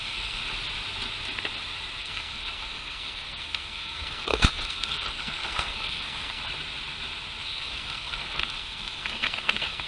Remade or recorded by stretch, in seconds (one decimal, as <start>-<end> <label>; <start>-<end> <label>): 0.0-0.4 remade; 0.4-2.0 recorded; 2.0-6.4 remade; 6.4-7.4 recorded; 7.4-9.9 remade